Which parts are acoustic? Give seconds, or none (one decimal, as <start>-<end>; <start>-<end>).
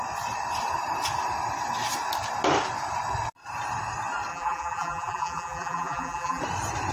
0.0-4.3; 6.4-6.9